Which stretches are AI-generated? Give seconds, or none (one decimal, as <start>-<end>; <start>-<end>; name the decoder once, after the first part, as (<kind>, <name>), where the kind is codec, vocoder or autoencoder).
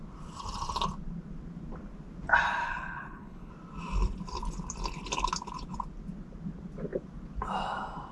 2.6-3.5 (codec, HILCodec)